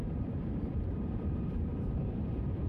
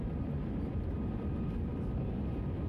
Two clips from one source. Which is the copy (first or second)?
first